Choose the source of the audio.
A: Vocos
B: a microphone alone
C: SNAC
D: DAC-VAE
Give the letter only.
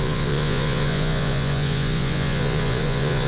A